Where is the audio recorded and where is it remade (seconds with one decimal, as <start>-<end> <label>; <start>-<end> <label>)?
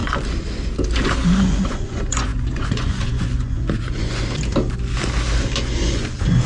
0.0-1.4 recorded; 1.4-4.2 remade; 4.2-5.8 recorded; 5.8-6.5 remade